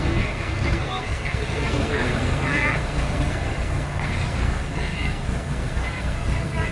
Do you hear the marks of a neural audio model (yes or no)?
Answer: yes